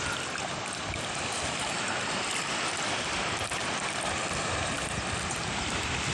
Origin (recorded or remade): recorded